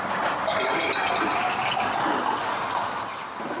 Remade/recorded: recorded